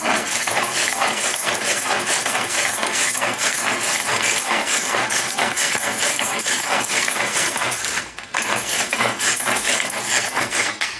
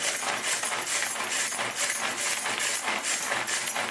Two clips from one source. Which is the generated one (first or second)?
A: first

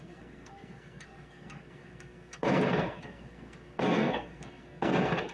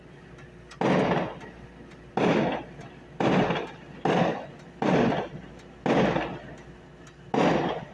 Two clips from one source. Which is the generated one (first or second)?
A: first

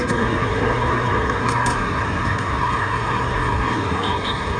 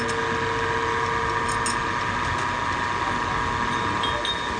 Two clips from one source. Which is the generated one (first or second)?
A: first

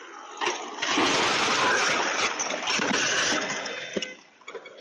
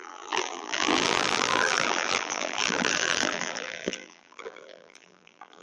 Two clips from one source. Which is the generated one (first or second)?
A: second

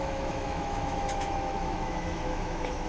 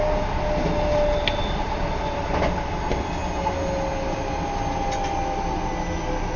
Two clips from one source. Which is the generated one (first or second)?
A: first